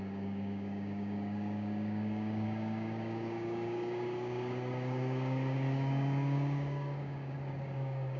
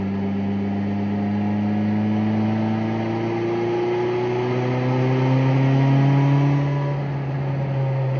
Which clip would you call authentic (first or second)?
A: second